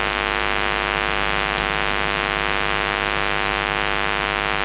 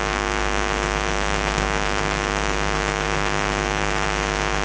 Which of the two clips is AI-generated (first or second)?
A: second